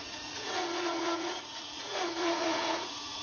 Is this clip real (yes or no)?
no